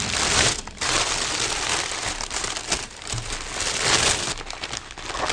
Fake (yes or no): no